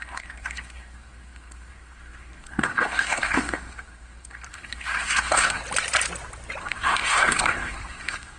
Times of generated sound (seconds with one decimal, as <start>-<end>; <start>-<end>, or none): 0.0-5.6; 6.6-8.4